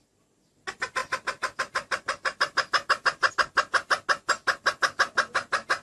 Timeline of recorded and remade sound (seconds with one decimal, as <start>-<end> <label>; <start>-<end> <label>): 0.0-5.8 recorded